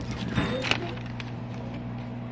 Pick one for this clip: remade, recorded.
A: recorded